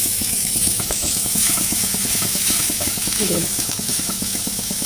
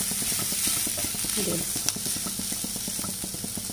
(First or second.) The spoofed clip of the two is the first